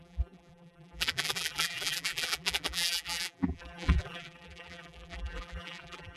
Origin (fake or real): fake